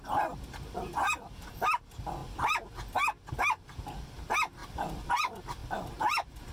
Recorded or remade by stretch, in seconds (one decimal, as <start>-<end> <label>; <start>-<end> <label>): 0.0-4.6 recorded; 4.6-5.1 remade; 5.1-5.6 recorded; 5.6-6.5 remade